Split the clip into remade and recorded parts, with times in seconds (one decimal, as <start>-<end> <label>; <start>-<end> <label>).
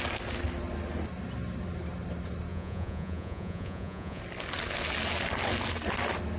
0.0-2.5 recorded; 2.5-4.2 remade; 4.2-6.4 recorded